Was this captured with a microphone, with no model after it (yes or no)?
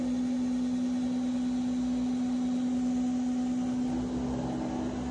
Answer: yes